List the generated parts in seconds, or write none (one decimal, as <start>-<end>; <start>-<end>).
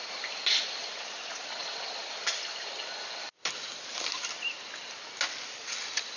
none